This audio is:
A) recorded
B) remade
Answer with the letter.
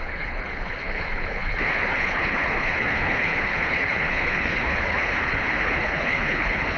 B